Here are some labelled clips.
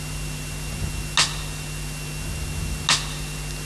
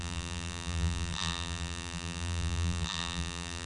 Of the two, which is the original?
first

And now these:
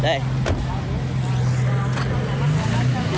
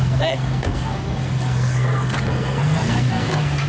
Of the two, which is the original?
first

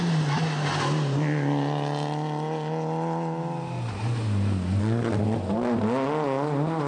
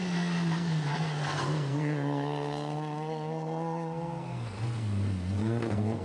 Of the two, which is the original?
first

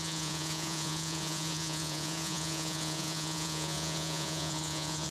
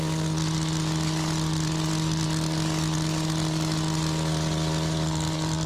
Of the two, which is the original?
second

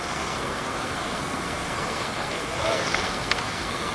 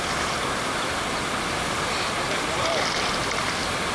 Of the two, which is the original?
second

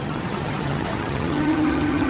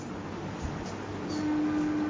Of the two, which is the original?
second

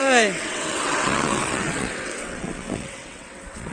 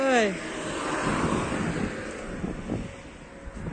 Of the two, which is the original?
second